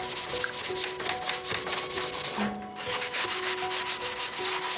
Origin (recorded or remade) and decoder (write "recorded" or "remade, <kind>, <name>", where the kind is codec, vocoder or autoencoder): recorded